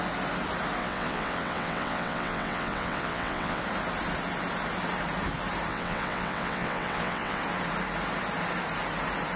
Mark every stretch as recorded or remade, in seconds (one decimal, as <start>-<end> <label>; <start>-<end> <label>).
0.0-0.8 recorded; 0.8-3.6 remade; 3.6-5.7 recorded; 5.7-7.4 remade; 7.4-9.4 recorded